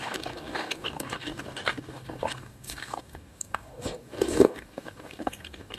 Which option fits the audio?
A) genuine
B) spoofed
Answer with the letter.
B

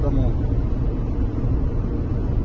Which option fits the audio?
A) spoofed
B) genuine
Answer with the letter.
B